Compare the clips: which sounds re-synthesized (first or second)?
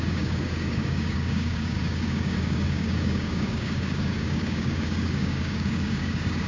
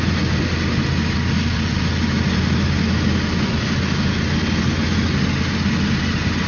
first